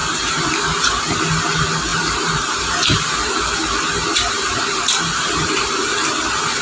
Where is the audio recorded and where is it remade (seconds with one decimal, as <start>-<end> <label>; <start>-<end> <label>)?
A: 0.0-1.0 remade; 1.0-1.9 recorded; 1.9-5.7 remade; 5.7-6.6 recorded